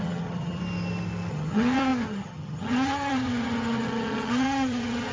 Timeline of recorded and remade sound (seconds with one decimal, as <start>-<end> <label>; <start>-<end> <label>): 0.0-0.6 remade; 0.6-1.3 recorded; 1.3-5.1 remade